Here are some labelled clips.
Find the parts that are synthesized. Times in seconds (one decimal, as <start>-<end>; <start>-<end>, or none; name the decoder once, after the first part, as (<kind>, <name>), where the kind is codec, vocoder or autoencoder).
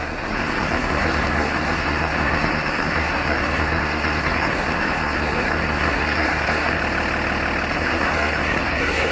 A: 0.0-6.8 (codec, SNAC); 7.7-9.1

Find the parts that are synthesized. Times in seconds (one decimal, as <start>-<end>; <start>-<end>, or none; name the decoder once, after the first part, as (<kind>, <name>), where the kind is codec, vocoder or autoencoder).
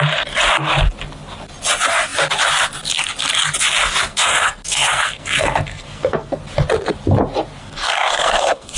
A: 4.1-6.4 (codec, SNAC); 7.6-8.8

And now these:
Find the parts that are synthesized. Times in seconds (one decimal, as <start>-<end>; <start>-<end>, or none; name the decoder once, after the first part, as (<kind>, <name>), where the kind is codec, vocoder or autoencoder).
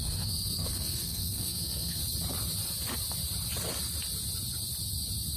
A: 0.0-2.0 (codec, SNAC)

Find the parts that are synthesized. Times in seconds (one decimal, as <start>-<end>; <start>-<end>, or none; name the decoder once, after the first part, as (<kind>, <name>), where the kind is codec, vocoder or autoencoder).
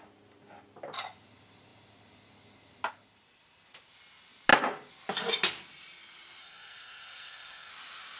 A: 6.4-7.7 (codec, SNAC)